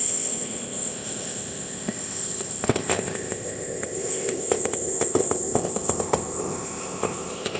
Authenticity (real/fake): fake